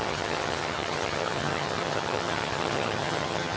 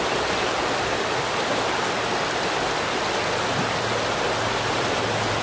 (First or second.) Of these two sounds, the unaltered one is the second